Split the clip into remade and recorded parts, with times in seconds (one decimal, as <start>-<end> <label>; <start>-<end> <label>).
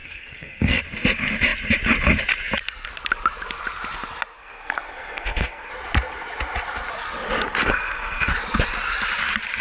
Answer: 0.0-0.8 remade; 0.8-4.3 recorded; 4.3-5.7 remade; 5.7-7.6 recorded; 7.6-8.3 remade; 8.3-9.6 recorded